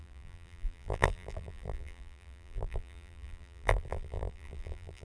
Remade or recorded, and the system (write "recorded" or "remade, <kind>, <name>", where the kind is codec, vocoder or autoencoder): remade, vocoder, BigVGAN v2